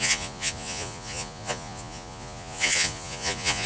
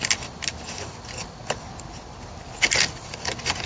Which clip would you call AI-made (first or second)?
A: first